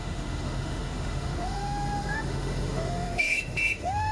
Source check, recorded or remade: remade